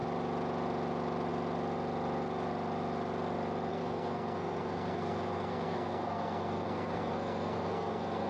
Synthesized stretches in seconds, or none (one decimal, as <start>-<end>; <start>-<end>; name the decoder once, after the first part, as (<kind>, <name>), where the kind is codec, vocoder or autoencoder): 3.7-8.3 (codec, SNAC)